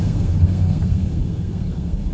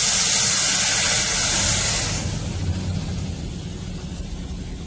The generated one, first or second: first